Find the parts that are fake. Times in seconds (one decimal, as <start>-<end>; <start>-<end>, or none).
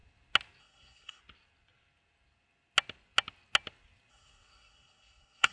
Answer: 0.6-1.2; 4.1-5.5